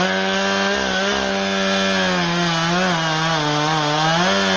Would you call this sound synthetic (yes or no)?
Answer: no